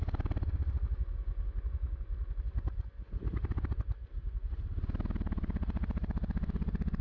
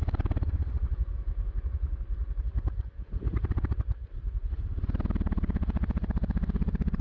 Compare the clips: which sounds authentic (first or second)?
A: first